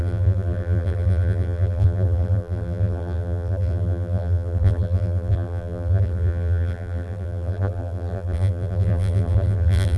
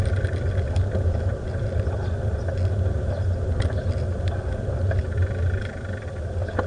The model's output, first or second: first